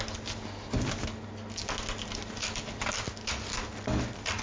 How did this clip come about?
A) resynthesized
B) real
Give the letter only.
B